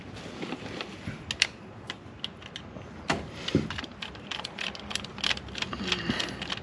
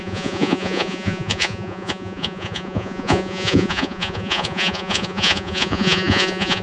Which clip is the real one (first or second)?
first